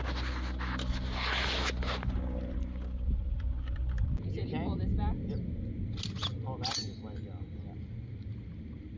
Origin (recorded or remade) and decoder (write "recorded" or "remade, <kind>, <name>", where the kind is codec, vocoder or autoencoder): recorded